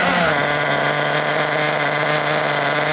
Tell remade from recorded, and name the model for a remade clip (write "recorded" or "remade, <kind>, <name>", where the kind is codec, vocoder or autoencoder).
recorded